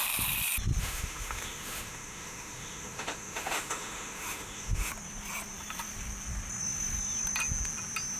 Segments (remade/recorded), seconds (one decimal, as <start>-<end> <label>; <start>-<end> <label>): 0.0-0.8 recorded; 0.8-4.9 remade; 4.9-8.2 recorded